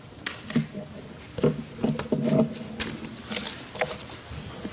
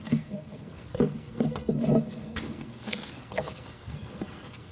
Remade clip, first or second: second